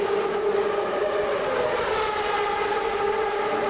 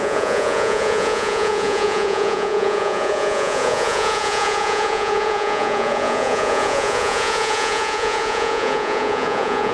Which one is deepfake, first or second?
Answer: second